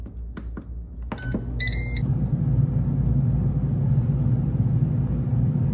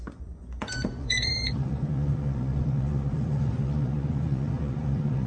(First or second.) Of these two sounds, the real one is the first